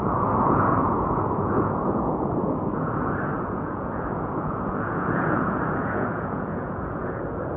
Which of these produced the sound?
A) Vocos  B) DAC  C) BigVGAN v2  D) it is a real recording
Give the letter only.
A